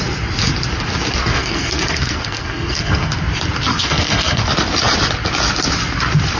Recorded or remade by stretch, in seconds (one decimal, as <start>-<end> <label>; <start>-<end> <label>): 0.0-1.2 recorded; 1.2-3.1 remade; 3.1-3.7 recorded; 3.7-4.4 remade; 4.4-6.4 recorded